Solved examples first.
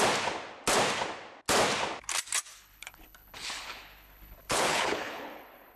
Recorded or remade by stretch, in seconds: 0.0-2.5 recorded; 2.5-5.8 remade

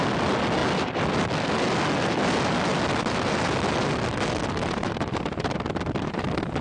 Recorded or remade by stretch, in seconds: 0.0-6.6 recorded

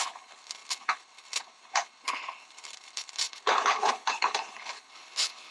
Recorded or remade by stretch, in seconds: 0.0-5.5 remade

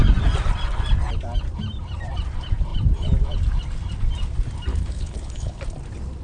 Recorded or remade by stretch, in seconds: 0.0-4.7 recorded; 4.7-5.6 remade; 5.6-6.2 recorded

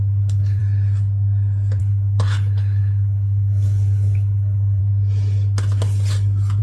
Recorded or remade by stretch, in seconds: 0.0-0.6 remade; 0.6-1.8 recorded; 1.8-4.8 remade; 4.8-6.6 recorded

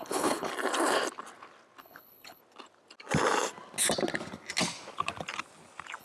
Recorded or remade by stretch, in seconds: 0.0-0.5 remade; 0.5-1.8 recorded; 1.8-2.4 remade; 2.4-6.0 recorded

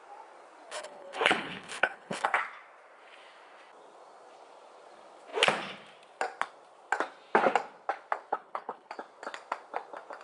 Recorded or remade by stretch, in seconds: 0.0-0.7 recorded; 0.7-2.4 remade; 2.4-8.3 recorded; 8.3-8.9 remade; 8.9-10.2 recorded